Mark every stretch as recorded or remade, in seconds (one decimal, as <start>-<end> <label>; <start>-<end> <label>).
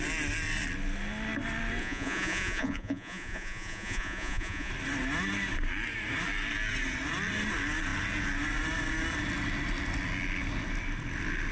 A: 0.0-1.8 recorded; 1.8-4.7 remade; 4.7-11.5 recorded